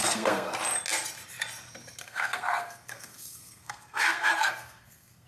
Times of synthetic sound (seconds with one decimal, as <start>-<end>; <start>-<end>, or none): 0.0-0.5; 2.0-5.3